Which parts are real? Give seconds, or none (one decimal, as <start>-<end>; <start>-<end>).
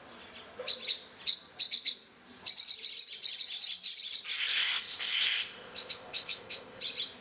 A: 0.0-4.4; 6.8-7.2